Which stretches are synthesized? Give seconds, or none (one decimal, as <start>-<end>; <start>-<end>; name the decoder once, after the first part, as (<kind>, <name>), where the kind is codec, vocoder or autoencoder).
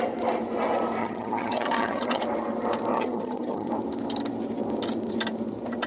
1.0-2.2 (vocoder, HiFi-GAN); 2.9-3.7